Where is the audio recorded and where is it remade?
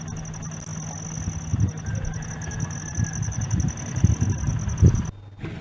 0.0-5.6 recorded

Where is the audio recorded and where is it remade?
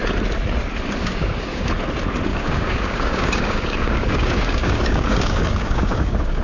0.0-1.0 recorded; 1.0-1.7 remade; 1.7-2.3 recorded; 2.3-6.4 remade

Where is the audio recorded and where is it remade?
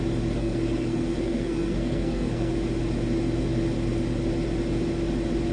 0.0-0.4 recorded; 0.4-2.5 remade; 2.5-5.5 recorded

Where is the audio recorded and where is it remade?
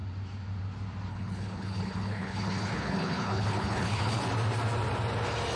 0.0-1.1 recorded; 1.1-4.2 remade; 4.2-5.6 recorded